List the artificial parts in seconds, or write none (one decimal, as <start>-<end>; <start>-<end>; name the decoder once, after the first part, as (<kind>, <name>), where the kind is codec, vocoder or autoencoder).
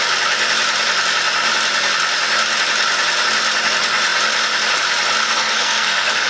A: 5.2-6.3 (codec, SNAC)